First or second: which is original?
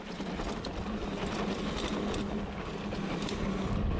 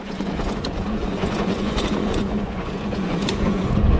first